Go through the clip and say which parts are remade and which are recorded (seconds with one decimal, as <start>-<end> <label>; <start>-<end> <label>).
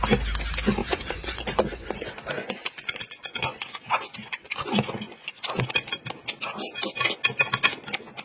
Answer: 0.0-0.8 recorded; 0.8-5.6 remade; 5.6-8.2 recorded